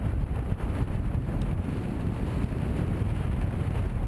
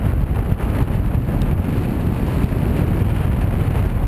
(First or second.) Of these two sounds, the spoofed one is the first